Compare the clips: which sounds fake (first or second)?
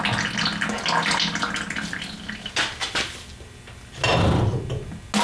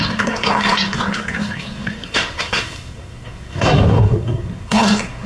second